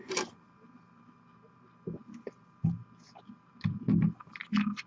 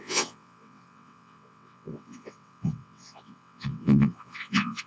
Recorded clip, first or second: first